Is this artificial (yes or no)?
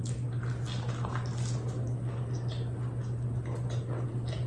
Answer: no